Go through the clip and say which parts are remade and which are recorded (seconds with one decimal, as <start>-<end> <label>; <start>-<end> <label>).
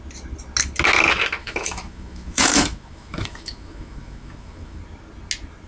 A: 0.0-1.4 recorded; 1.4-4.8 remade; 4.8-5.7 recorded